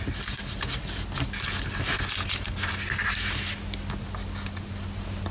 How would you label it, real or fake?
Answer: real